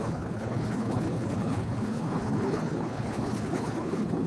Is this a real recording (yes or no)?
no